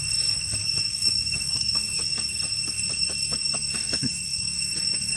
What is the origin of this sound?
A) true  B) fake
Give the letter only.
B